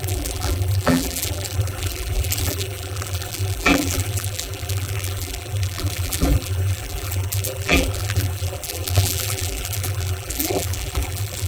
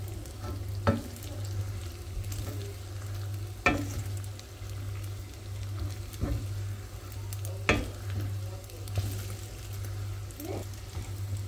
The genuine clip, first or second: second